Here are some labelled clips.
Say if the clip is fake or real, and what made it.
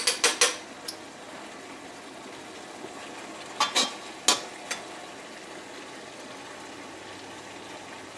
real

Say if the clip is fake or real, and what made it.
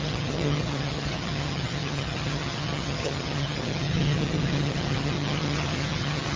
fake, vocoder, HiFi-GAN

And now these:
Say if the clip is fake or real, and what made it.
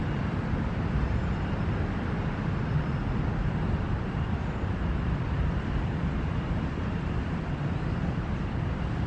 fake, vocoder, BigVGAN v2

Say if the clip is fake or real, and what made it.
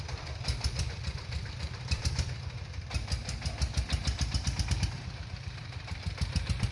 fake, vocoder, BigVGAN v2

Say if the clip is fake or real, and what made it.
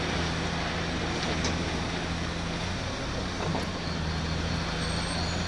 real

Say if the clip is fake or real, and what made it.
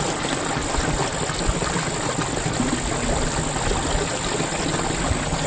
real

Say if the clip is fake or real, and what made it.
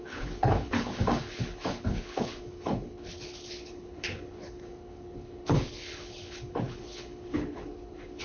fake, codec, HILCodec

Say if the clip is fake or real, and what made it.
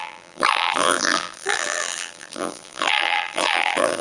fake, vocoder, BigVGAN v2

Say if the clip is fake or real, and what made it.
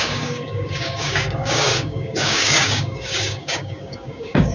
fake, codec, DAC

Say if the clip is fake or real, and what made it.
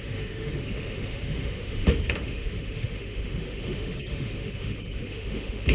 fake, autoencoder, DAC-VAE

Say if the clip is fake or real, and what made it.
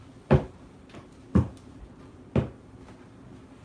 real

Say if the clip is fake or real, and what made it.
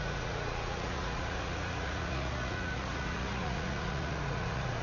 fake, vocoder, Vocos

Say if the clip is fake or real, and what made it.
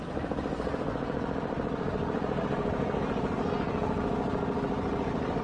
real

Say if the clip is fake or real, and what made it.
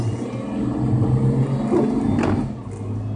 real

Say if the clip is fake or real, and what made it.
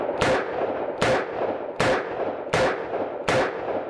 real